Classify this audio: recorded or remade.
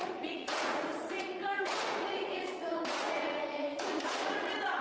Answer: remade